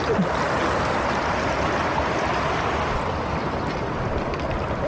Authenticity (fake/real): real